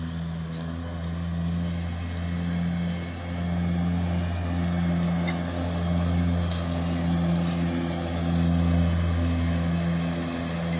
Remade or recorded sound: recorded